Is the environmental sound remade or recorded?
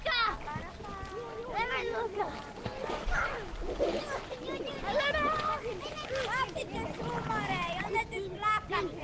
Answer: recorded